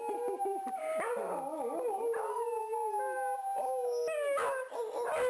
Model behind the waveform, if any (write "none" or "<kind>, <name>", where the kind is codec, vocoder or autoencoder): none